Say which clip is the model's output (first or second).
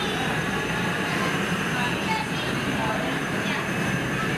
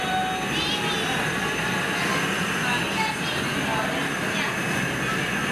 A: first